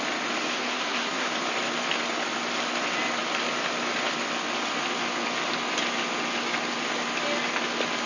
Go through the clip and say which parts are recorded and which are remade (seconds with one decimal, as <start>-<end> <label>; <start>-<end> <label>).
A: 0.0-0.5 recorded; 0.5-1.3 remade; 1.3-8.1 recorded